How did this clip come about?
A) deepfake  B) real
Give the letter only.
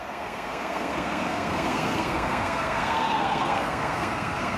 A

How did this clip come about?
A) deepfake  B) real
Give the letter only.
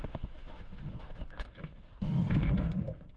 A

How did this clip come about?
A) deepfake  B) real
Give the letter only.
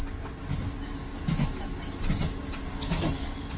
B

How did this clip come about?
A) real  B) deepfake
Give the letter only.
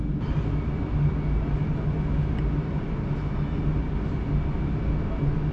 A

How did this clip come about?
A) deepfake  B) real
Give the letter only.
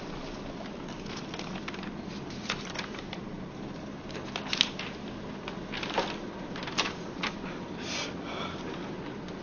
B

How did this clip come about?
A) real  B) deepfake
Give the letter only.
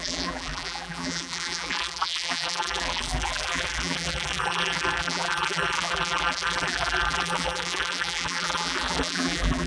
B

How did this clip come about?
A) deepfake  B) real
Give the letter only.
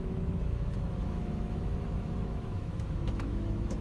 A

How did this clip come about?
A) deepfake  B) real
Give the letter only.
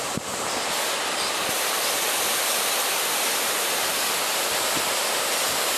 A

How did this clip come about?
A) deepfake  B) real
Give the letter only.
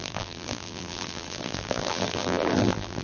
A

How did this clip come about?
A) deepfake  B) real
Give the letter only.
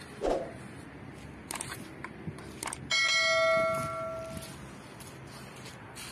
B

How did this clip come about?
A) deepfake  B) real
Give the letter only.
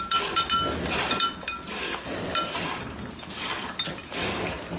B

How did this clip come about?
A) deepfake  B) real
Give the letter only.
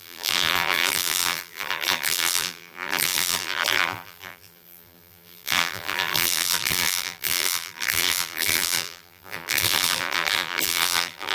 A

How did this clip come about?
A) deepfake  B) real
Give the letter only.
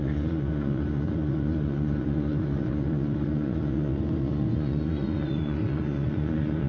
A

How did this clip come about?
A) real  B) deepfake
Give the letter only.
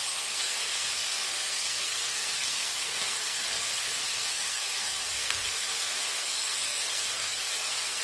B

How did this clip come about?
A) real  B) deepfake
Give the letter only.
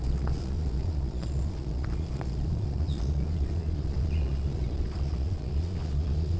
B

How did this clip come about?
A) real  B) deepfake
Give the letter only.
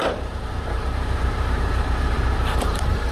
B